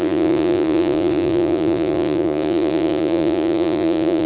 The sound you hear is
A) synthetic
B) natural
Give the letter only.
A